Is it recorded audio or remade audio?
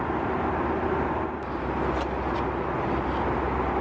recorded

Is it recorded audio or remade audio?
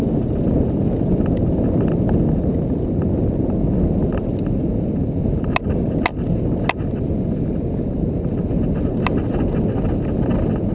recorded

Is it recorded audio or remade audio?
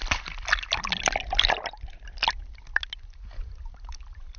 recorded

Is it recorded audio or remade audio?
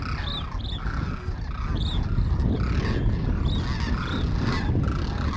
recorded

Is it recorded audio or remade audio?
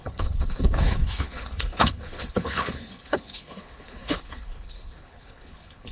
remade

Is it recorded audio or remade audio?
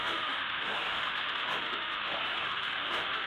remade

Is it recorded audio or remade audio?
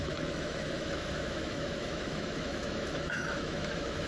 remade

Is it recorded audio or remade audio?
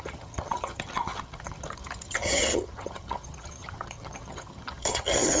remade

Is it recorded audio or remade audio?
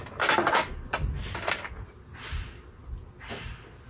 recorded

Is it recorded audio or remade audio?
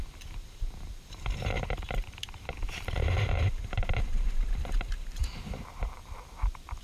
remade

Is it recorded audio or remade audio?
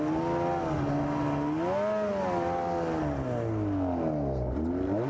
recorded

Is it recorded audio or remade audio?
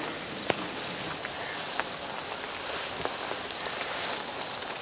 recorded